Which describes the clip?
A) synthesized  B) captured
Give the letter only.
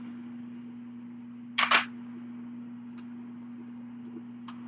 B